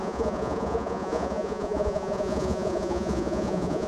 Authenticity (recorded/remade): remade